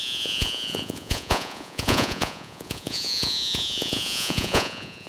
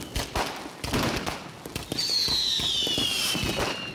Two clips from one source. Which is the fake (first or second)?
first